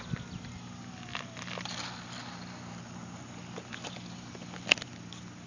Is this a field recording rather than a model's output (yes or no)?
yes